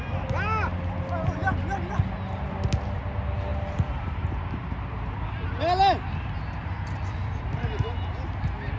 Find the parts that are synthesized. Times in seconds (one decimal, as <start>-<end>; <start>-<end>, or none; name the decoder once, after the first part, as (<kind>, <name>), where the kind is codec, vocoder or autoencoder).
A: 3.5-5.6 (vocoder, BigVGAN v2)